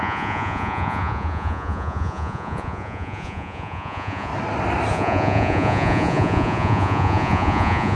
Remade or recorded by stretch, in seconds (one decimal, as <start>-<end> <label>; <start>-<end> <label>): 0.0-4.3 remade; 4.3-4.9 recorded; 4.9-8.0 remade